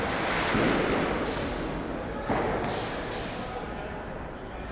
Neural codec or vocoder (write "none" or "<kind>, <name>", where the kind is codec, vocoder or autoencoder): none